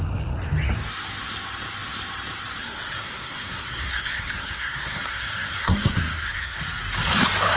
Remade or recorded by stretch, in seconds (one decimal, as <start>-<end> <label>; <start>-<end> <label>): 0.0-2.6 recorded; 2.6-6.6 remade; 6.6-7.6 recorded